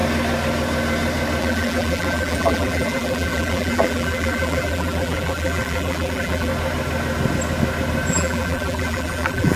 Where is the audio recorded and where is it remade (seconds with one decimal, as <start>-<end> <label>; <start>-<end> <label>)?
0.0-1.4 recorded; 1.4-6.5 remade; 6.5-8.1 recorded; 8.1-9.6 remade